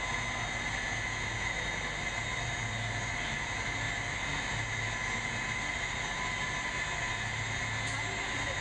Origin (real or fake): real